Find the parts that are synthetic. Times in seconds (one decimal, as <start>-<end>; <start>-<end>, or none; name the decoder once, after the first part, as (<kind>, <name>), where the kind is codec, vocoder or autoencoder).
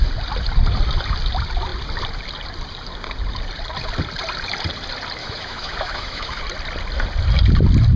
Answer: 5.2-6.4 (autoencoder, DAC-VAE)